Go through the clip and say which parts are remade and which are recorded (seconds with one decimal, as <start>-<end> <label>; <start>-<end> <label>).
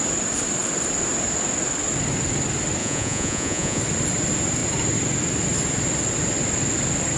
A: 0.0-2.8 recorded; 2.8-3.8 remade; 3.8-7.2 recorded